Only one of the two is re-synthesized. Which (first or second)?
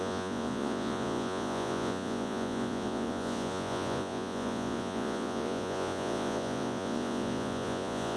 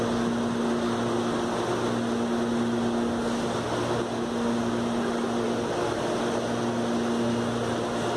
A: first